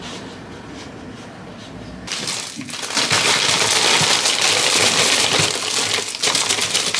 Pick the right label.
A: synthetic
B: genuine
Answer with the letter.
B